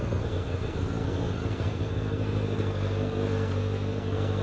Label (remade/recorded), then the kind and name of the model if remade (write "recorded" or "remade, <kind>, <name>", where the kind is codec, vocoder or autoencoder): remade, codec, SNAC